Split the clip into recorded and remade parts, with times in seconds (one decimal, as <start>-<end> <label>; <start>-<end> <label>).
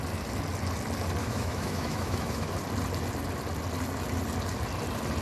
0.0-1.2 recorded; 1.2-2.5 remade; 2.5-5.2 recorded